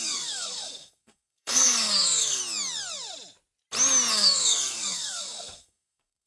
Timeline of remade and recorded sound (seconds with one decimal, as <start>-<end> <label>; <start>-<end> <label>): 0.0-2.4 remade; 2.4-4.1 recorded; 4.1-6.3 remade